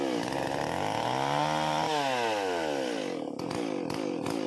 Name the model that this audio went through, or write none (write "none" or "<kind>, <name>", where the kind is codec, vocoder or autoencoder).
none